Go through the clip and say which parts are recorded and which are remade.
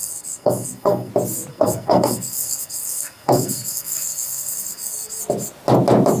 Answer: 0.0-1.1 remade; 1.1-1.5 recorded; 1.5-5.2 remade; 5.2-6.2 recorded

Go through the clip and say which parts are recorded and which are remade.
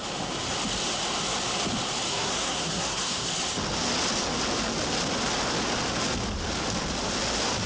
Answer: 0.0-2.1 recorded; 2.1-3.3 remade; 3.3-7.7 recorded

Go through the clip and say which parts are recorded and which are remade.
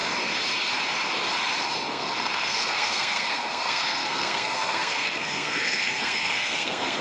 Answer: 0.0-1.9 recorded; 1.9-7.0 remade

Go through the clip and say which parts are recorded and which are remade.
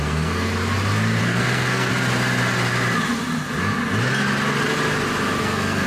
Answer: 0.0-0.5 remade; 0.5-1.2 recorded; 1.2-1.9 remade; 1.9-5.4 recorded; 5.4-5.9 remade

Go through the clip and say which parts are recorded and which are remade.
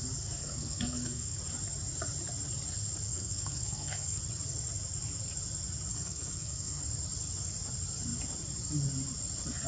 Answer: 0.0-0.4 recorded; 0.4-1.4 remade; 1.4-3.1 recorded; 3.1-4.2 remade; 4.2-5.9 recorded; 5.9-6.8 remade; 6.8-9.7 recorded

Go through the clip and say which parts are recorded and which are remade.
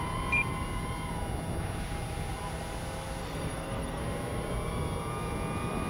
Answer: 0.0-3.2 recorded; 3.2-4.0 remade; 4.0-5.9 recorded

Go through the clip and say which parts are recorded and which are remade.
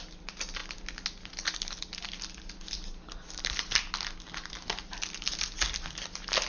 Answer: 0.0-6.5 recorded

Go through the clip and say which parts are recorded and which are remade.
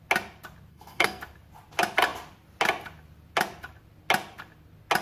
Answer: 0.0-0.7 recorded; 0.7-1.2 remade; 1.2-5.0 recorded